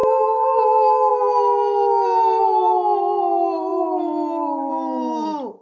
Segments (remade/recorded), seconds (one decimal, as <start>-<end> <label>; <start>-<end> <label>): 0.0-5.6 recorded